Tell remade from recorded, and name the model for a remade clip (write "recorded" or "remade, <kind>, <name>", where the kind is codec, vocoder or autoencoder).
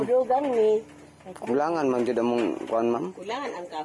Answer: recorded